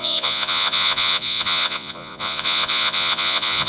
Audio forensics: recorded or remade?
remade